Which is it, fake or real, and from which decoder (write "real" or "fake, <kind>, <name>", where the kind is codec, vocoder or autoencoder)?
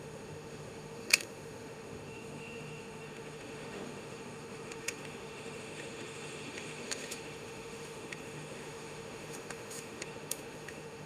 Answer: fake, autoencoder, DAC-VAE